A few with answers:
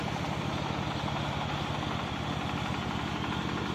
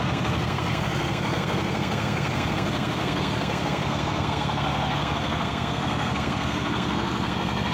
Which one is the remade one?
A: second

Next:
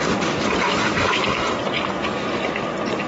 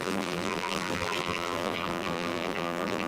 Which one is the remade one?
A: second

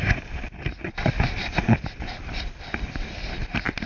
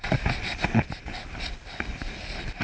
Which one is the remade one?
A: first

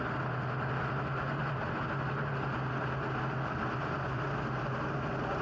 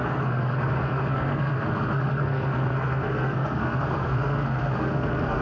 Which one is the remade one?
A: second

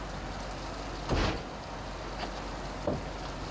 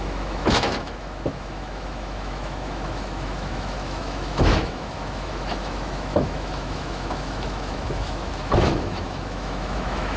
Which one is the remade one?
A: second